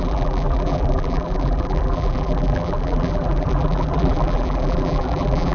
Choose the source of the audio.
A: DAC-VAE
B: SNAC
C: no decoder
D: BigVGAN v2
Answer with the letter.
D